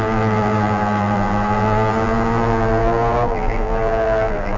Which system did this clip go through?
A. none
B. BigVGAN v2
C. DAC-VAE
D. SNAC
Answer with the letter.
B